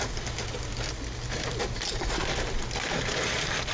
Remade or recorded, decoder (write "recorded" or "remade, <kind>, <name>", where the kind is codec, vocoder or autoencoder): recorded